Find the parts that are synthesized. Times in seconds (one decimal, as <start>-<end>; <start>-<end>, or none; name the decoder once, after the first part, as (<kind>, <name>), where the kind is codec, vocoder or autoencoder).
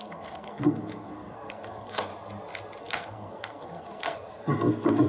0.0-2.1 (codec, SNAC); 2.8-5.1